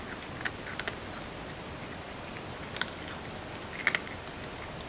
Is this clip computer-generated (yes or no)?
no